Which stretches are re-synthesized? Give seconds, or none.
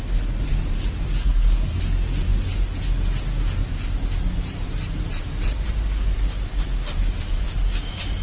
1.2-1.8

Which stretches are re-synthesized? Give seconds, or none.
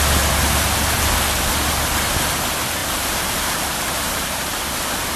2.8-4.4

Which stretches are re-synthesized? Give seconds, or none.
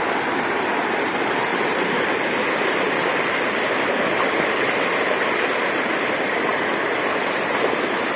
1.5-2.9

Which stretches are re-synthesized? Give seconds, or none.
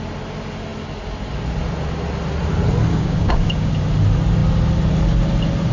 2.9-3.7